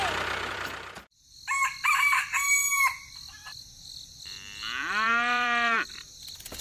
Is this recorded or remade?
remade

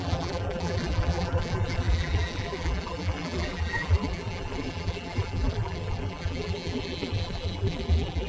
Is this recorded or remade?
remade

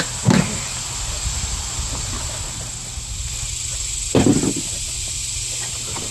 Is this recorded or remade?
recorded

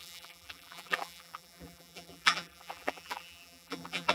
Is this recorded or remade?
remade